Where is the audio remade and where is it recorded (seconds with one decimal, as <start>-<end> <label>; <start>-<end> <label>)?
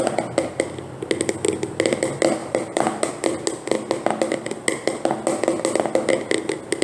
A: 0.0-2.4 recorded; 2.4-3.1 remade; 3.1-6.8 recorded